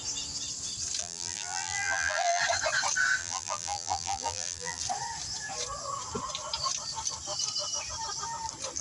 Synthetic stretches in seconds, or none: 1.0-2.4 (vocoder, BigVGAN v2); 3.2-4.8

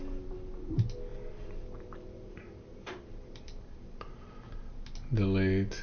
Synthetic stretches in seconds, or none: 1.1-4.6 (vocoder, BigVGAN v2)

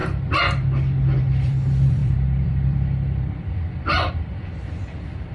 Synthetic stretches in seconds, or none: 1.2-5.3 (vocoder, BigVGAN v2)